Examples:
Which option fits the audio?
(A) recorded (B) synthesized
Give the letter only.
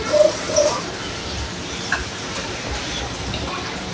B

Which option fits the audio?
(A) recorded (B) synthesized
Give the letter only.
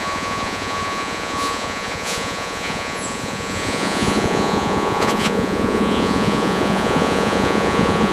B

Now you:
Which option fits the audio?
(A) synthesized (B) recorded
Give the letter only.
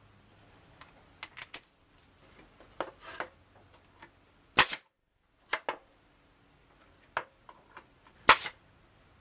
B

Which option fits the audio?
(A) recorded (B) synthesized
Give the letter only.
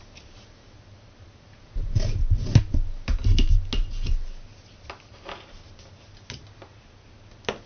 A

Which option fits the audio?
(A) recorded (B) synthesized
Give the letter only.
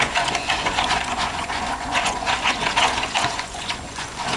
B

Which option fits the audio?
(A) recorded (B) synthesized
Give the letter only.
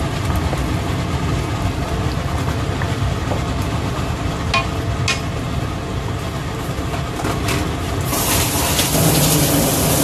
A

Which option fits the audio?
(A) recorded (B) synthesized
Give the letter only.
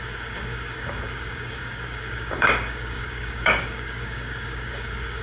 B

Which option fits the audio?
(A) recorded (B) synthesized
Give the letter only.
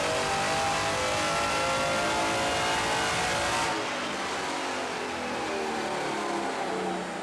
A